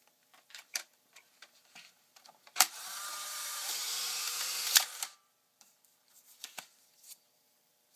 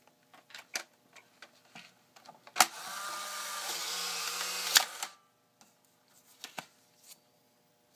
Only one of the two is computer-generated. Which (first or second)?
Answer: first